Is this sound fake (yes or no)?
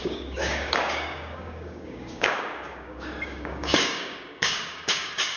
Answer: yes